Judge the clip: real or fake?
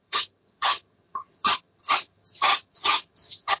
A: fake